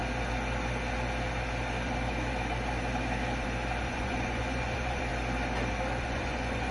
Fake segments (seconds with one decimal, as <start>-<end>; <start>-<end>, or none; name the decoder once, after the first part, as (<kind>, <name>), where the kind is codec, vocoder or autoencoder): 3.8-5.1 (vocoder, Vocos); 6.0-6.7